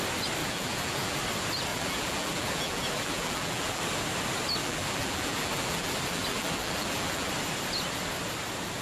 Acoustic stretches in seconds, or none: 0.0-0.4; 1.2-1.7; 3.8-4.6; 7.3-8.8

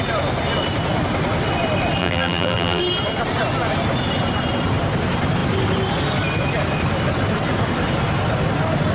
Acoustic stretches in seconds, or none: 0.0-2.0; 2.8-8.9